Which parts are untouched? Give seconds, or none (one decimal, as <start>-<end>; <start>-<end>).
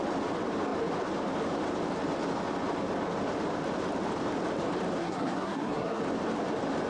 0.0-5.0; 6.0-6.9